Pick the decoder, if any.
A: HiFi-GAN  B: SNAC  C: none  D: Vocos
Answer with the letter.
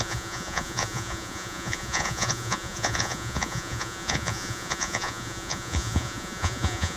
D